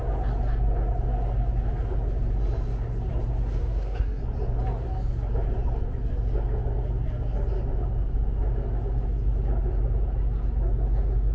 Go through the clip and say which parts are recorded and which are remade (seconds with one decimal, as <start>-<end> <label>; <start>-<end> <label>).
0.0-3.6 recorded; 3.6-4.2 remade; 4.2-11.3 recorded